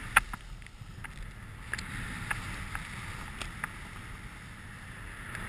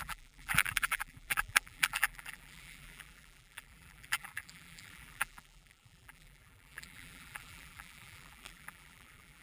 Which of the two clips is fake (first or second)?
second